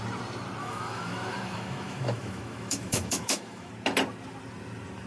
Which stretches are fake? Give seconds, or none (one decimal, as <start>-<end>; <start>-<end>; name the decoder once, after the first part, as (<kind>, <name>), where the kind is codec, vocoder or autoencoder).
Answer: 0.6-3.7 (autoencoder, DAC-VAE)